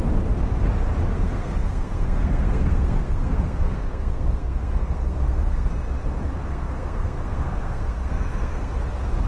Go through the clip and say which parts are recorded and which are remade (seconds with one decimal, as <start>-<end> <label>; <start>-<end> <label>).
0.0-1.1 recorded; 1.1-5.7 remade; 5.7-6.5 recorded; 6.5-8.7 remade; 8.7-9.3 recorded